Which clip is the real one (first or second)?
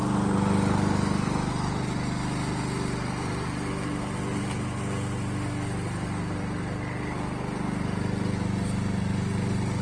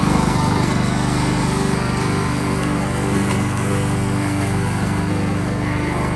first